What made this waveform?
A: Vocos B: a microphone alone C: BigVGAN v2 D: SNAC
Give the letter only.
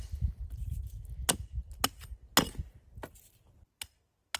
B